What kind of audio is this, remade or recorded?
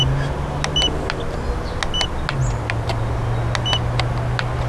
recorded